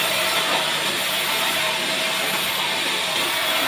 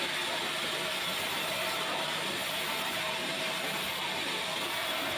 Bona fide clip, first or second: first